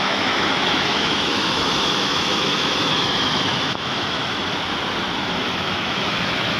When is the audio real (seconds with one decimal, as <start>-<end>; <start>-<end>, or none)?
4.4-5.0